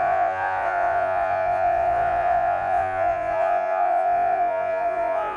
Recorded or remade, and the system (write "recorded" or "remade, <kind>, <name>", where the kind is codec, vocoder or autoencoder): remade, vocoder, Vocos